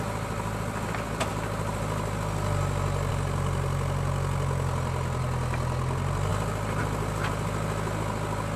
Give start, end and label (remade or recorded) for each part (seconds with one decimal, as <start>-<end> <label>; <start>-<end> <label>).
0.0-8.6 recorded